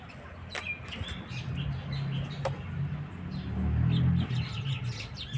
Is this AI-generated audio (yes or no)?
no